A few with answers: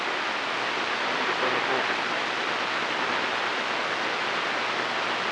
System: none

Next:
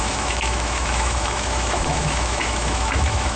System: autoencoder, DAC-VAE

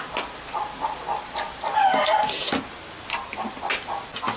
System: none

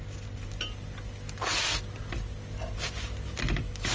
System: none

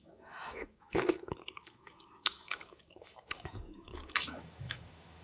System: autoencoder, DAC-VAE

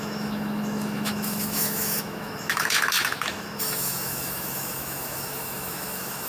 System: autoencoder, DAC-VAE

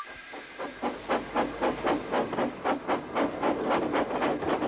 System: none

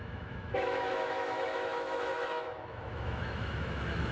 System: autoencoder, DAC-VAE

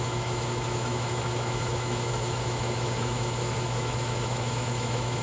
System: autoencoder, DAC-VAE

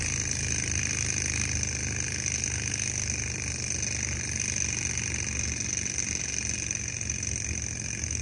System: none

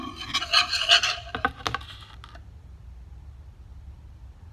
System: none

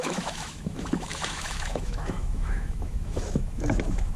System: autoencoder, DAC-VAE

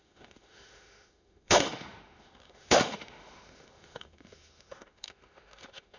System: autoencoder, DAC-VAE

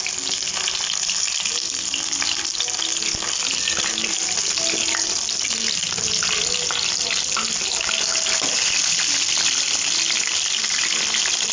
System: none